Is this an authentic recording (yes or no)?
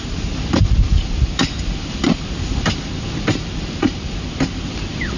yes